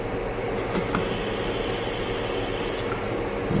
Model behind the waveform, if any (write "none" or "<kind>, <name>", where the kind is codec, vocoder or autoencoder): none